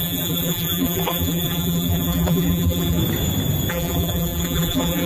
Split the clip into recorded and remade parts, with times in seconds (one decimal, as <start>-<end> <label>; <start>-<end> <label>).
0.0-3.0 remade; 3.0-3.7 recorded; 3.7-5.1 remade